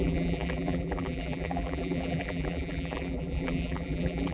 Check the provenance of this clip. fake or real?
fake